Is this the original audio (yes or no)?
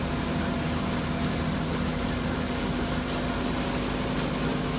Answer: yes